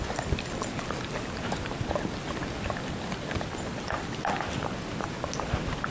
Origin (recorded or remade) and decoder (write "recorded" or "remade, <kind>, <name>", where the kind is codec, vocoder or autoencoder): recorded